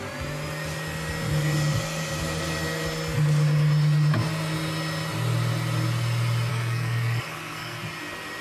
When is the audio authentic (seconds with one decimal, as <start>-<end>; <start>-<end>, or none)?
0.0-6.5; 7.8-8.4